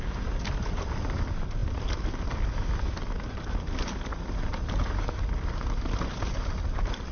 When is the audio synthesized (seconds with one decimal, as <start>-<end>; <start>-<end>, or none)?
none